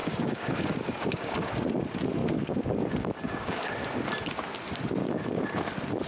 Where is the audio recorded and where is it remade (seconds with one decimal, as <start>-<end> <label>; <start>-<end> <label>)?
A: 0.0-1.5 remade; 1.5-2.2 recorded; 2.2-3.7 remade; 3.7-5.0 recorded; 5.0-5.6 remade; 5.6-6.1 recorded